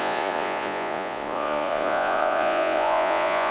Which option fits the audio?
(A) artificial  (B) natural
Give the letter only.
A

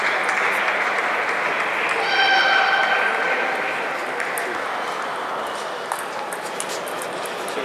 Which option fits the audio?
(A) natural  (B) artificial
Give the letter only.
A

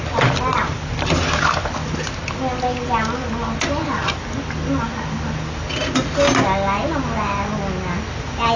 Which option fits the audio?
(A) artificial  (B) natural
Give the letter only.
B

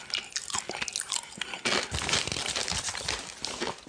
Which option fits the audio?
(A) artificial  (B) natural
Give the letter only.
B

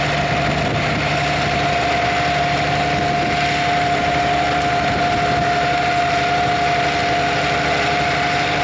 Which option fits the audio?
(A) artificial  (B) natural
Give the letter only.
B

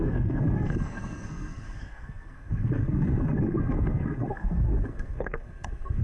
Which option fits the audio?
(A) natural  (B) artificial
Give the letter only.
B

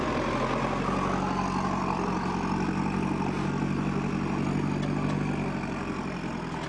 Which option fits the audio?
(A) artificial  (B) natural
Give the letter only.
B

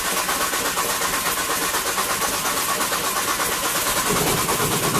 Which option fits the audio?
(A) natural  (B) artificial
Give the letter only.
A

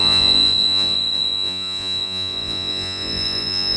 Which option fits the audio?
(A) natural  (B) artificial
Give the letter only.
B